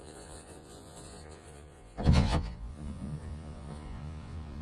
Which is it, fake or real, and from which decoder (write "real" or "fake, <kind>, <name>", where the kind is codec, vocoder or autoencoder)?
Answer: fake, vocoder, Vocos